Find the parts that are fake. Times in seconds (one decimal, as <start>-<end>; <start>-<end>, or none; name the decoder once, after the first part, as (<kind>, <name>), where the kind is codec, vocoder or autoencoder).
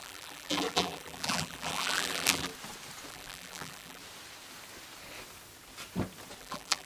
0.0-2.5 (vocoder, BigVGAN v2); 3.1-4.0; 6.4-6.9